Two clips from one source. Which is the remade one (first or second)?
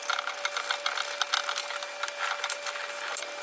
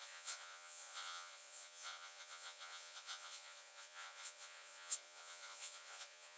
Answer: second